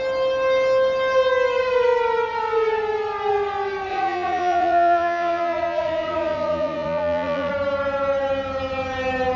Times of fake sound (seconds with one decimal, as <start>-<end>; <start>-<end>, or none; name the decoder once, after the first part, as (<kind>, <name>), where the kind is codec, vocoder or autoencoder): 3.9-7.5 (vocoder, Vocos)